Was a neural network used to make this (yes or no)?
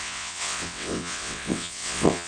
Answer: yes